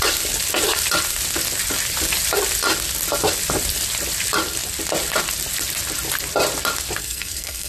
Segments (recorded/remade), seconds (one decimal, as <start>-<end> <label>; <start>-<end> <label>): 0.0-7.0 recorded; 7.0-7.7 remade

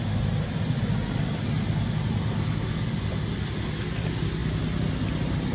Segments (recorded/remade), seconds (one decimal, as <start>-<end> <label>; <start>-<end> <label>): 0.0-5.5 recorded

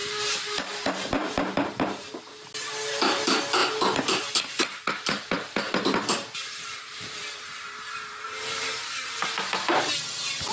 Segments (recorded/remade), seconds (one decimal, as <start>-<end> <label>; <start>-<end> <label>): 0.0-2.2 remade; 2.2-6.4 recorded; 6.4-9.2 remade; 9.2-10.5 recorded

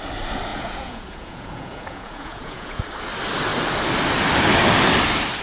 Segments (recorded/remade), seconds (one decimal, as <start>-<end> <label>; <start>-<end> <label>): 0.0-0.5 recorded; 0.5-2.9 remade; 2.9-5.4 recorded

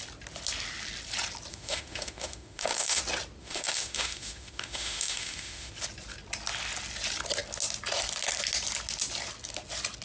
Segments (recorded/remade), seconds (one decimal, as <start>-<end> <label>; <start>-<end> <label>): 0.0-1.5 recorded; 1.5-3.0 remade; 3.0-3.4 recorded; 3.4-5.7 remade; 5.7-10.0 recorded